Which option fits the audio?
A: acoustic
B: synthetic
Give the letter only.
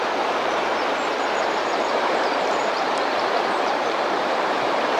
B